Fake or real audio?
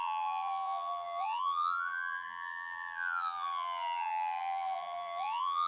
fake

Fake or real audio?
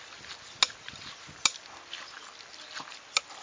real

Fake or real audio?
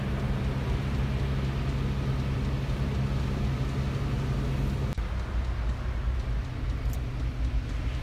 real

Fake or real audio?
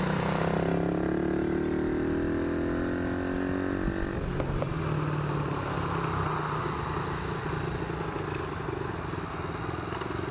real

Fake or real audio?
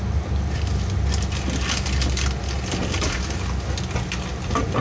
real